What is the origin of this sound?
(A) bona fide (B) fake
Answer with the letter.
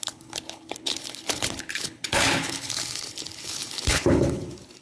B